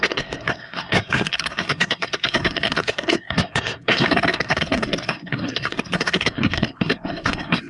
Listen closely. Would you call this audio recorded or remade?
remade